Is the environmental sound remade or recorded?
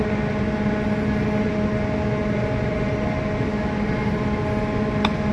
recorded